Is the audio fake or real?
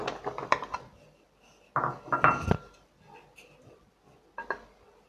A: real